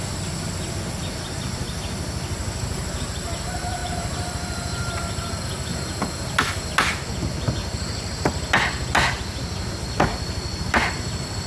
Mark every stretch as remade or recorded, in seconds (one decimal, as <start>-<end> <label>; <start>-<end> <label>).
0.0-3.8 recorded; 3.8-5.4 remade; 5.4-7.6 recorded; 7.6-8.4 remade; 8.4-11.5 recorded